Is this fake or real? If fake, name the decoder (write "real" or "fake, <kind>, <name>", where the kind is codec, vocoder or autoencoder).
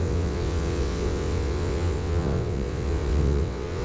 fake, vocoder, WaveNeXt